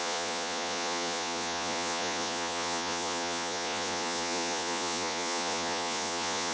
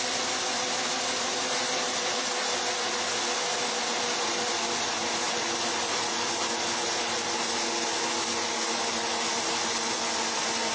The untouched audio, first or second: second